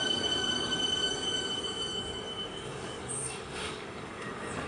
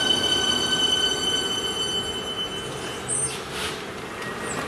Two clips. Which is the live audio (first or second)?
second